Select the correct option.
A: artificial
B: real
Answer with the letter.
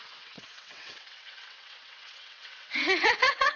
A